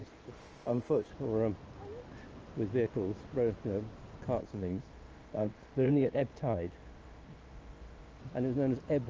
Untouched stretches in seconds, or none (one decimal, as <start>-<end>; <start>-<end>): 1.1-4.4; 8.2-9.1